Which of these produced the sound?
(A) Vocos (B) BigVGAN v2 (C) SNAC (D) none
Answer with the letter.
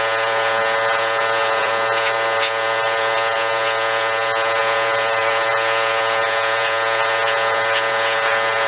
A